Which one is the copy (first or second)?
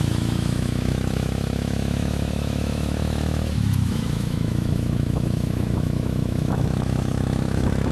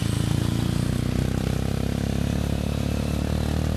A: first